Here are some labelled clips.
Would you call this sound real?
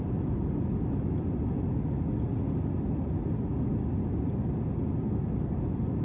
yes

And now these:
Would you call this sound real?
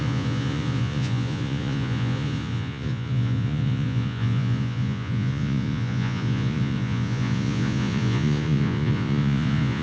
no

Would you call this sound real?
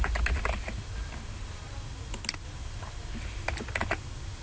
yes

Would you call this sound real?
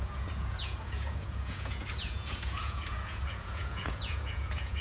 no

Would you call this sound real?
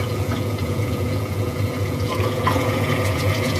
no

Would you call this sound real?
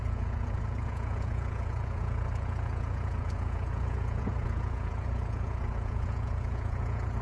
no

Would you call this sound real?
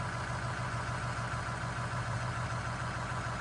no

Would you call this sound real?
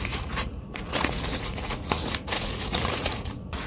no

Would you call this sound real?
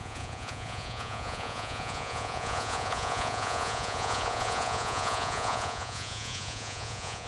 no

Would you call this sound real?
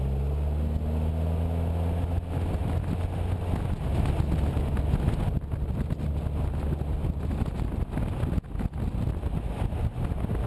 yes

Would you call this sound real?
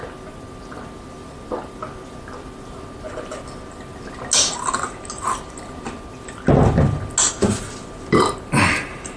yes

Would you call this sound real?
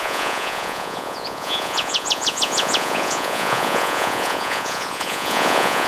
no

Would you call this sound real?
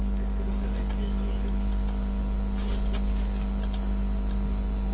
yes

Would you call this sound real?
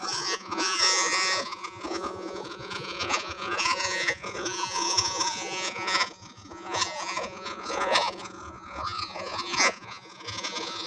no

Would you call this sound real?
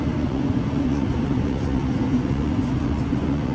no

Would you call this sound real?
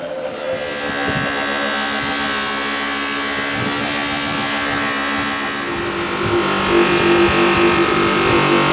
yes